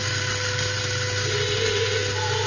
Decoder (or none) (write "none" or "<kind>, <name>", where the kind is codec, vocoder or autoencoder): none